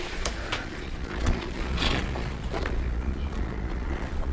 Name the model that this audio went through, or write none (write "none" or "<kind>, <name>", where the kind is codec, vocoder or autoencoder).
vocoder, Vocos